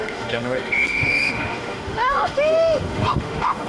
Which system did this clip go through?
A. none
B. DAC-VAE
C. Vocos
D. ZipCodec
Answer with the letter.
B